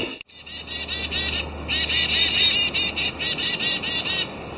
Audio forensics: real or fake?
real